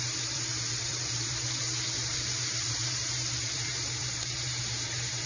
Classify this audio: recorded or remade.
remade